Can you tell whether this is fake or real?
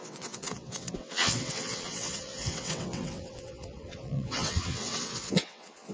fake